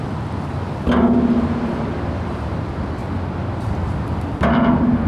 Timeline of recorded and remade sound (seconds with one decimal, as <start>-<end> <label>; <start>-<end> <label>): 0.0-5.1 recorded